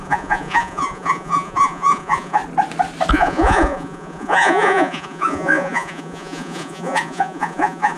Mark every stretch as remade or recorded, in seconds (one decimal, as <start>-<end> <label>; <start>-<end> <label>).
0.0-2.4 remade; 2.4-3.1 recorded; 3.1-8.0 remade